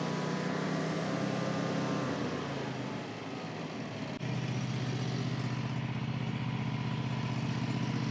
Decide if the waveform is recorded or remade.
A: recorded